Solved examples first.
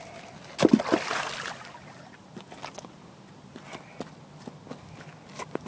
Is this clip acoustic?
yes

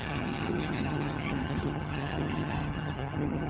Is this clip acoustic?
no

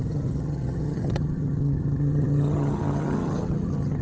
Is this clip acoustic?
no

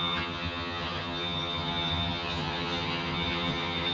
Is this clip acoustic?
no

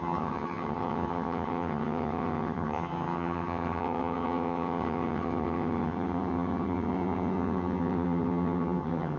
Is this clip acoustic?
no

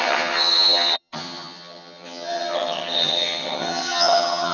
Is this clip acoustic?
no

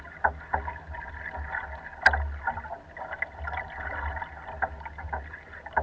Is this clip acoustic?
yes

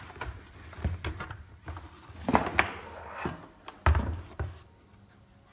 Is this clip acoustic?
yes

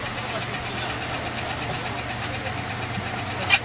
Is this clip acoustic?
yes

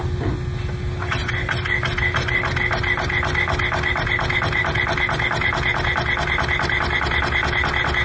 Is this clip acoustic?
yes